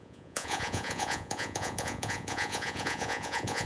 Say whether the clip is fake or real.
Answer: fake